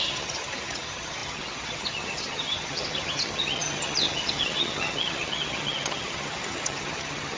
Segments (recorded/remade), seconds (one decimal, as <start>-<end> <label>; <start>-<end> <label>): 0.0-7.4 remade